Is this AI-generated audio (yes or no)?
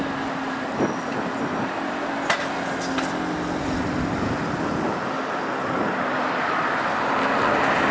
no